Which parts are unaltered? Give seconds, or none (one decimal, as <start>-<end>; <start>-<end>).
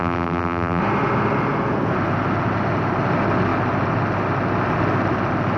0.8-5.6